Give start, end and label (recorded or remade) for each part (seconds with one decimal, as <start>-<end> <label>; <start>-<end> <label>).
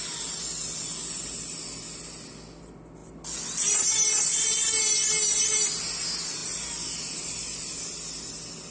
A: 0.0-8.7 recorded